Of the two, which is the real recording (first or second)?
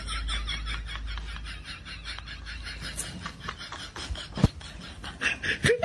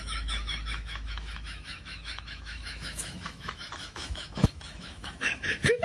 first